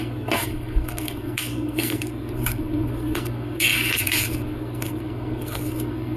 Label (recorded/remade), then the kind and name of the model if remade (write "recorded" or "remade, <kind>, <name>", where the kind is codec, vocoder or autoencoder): remade, codec, SNAC